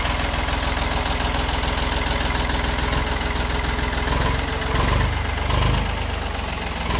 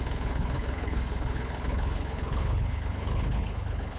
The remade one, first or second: second